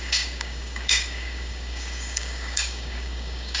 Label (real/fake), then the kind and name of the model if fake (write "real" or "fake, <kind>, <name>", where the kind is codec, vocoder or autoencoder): fake, codec, DAC